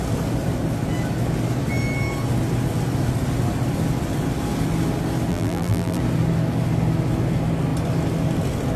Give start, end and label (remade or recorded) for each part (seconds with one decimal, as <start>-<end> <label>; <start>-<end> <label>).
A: 0.0-5.3 recorded; 5.3-6.0 remade; 6.0-8.8 recorded